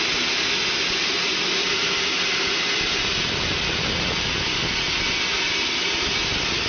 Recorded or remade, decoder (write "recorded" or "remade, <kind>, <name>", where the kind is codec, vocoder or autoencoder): recorded